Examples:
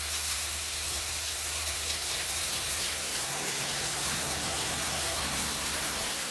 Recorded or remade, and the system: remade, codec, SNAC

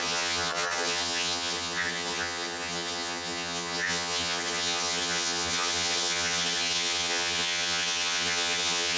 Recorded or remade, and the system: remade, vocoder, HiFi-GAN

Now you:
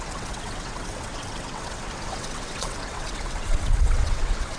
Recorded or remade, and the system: remade, vocoder, WaveNeXt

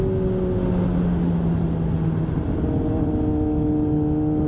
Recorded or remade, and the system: recorded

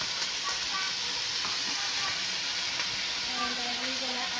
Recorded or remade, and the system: recorded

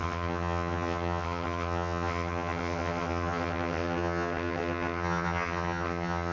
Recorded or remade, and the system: remade, vocoder, HiFi-GAN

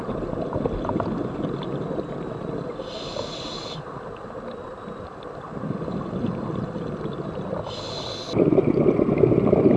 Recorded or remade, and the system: recorded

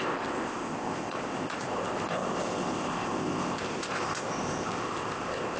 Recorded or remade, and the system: remade, codec, ZipCodec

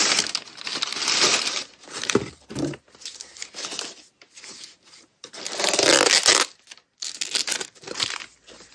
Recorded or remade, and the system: recorded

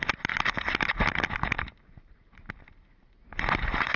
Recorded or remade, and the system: recorded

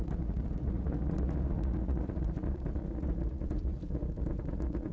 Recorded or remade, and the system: remade, vocoder, Vocos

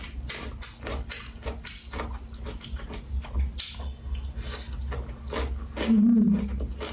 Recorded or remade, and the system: recorded